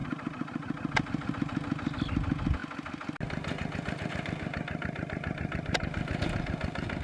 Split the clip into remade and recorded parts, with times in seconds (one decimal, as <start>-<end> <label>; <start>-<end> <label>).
0.0-7.0 recorded